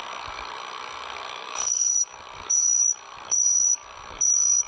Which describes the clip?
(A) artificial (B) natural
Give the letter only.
A